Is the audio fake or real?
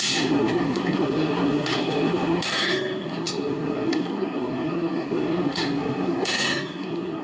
fake